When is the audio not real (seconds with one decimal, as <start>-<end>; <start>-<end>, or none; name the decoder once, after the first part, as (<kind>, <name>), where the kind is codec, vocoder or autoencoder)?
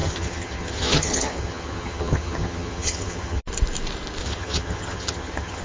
0.0-3.4 (vocoder, HiFi-GAN); 4.2-5.6